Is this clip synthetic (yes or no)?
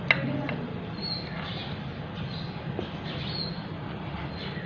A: no